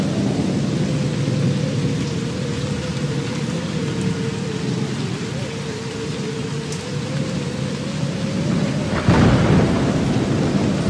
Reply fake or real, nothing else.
real